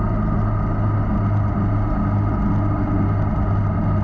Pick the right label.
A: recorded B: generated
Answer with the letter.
A